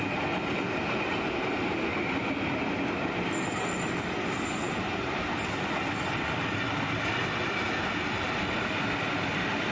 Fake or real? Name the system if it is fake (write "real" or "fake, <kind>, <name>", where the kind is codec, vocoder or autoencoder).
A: real